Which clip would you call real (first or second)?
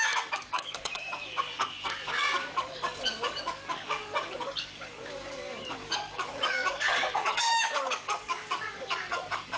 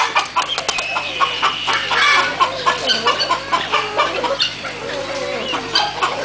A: second